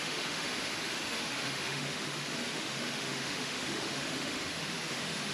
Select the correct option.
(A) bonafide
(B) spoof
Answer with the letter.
B